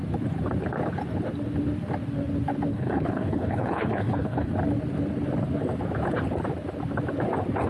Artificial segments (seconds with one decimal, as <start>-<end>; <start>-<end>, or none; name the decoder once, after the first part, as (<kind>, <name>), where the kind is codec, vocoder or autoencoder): 2.7-4.5 (codec, HILCodec)